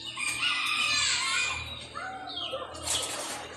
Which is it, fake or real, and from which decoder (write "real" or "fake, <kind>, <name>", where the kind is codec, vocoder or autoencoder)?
real